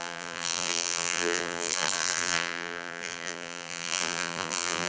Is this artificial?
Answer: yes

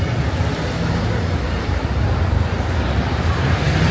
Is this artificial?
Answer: yes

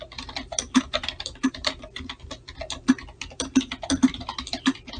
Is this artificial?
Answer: yes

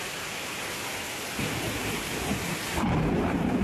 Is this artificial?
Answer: yes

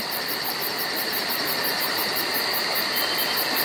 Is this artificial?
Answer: yes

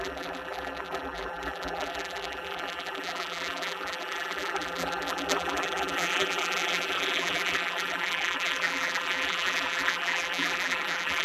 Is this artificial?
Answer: yes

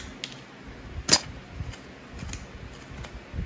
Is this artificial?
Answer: no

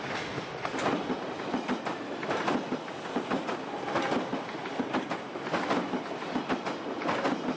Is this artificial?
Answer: no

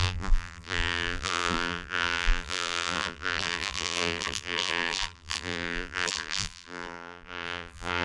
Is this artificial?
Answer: yes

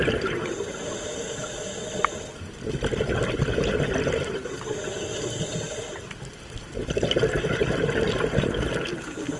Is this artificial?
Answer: no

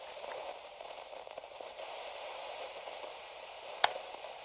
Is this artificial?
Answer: yes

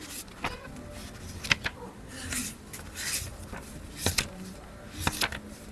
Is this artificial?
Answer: no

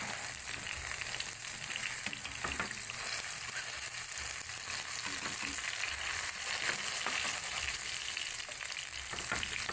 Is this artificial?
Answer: yes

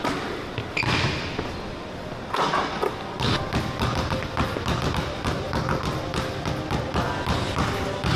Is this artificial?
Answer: no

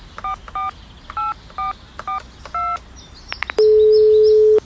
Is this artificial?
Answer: no